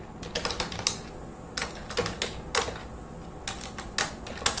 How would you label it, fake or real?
real